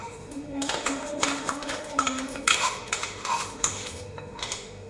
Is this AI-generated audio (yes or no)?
yes